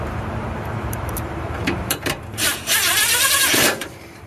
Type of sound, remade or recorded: remade